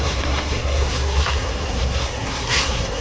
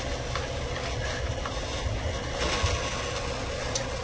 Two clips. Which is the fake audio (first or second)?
first